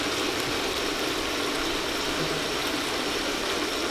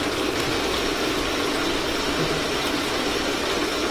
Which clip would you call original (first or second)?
second